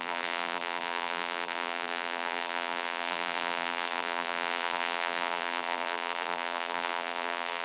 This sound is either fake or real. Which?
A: fake